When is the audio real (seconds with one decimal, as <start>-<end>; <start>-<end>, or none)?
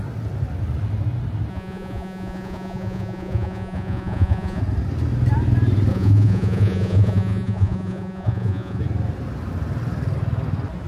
0.0-1.5; 4.6-5.9; 8.8-10.9